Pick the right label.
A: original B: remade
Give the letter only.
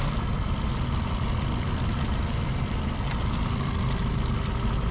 A